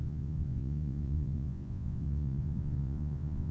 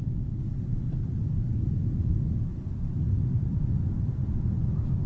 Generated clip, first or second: first